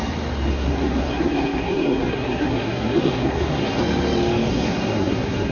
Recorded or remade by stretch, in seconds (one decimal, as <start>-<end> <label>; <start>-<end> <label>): 0.0-0.5 recorded; 0.5-3.8 remade; 3.8-4.5 recorded; 4.5-5.5 remade